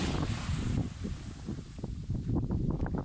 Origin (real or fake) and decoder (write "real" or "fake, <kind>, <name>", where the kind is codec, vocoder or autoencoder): real